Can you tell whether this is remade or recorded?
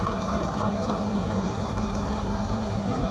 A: remade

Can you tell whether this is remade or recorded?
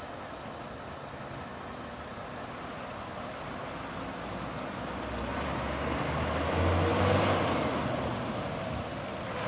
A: recorded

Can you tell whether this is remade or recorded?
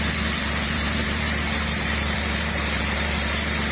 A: remade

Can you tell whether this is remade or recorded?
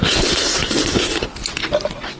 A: recorded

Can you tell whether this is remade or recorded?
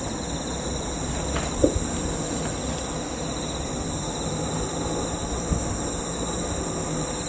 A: recorded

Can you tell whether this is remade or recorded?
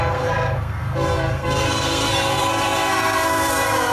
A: remade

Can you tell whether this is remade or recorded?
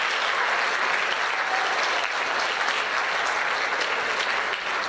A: recorded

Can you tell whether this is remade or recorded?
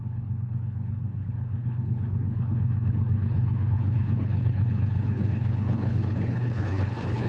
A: remade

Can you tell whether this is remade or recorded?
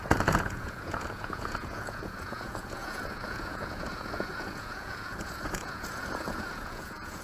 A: remade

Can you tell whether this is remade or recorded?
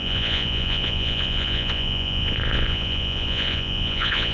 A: remade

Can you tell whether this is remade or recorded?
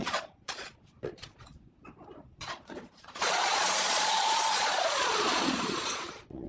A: remade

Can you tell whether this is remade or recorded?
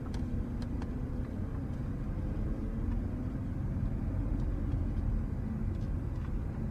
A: recorded